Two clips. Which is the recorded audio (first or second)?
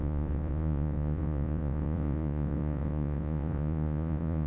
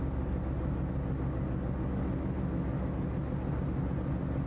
second